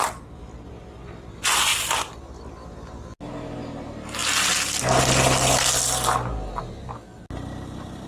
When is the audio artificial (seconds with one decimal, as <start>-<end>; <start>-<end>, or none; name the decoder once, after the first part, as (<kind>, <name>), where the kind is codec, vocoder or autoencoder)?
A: none